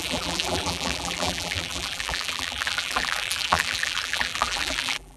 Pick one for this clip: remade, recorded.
remade